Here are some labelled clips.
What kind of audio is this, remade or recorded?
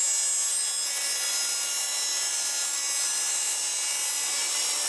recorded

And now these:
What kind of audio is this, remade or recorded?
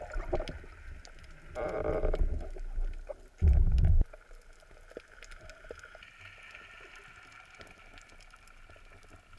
recorded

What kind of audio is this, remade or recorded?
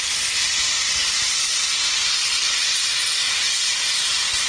remade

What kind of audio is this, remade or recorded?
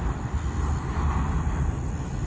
recorded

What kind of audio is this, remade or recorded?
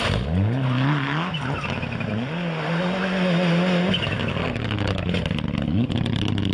recorded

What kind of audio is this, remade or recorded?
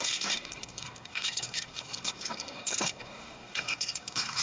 remade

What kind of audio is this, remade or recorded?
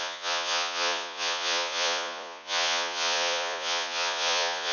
remade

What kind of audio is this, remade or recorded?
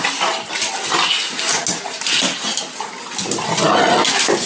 recorded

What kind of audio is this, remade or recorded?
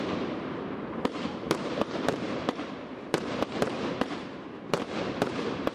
remade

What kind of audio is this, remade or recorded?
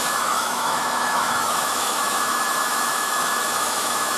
remade